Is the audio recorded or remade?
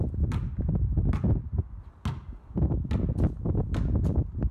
recorded